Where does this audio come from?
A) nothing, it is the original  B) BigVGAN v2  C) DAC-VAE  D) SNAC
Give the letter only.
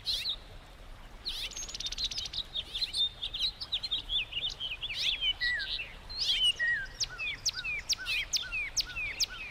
A